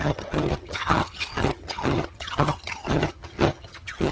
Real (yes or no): no